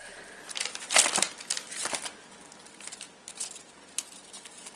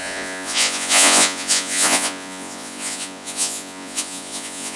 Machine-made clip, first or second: second